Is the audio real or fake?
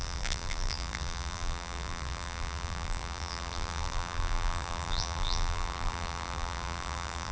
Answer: fake